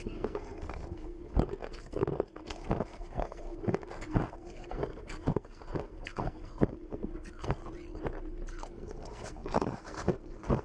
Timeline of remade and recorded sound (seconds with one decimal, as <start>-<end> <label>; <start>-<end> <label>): 0.0-7.6 remade; 7.6-8.5 recorded; 8.5-10.6 remade